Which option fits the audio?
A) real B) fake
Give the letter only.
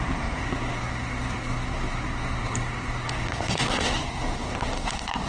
B